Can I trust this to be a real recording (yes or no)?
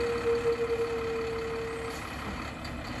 yes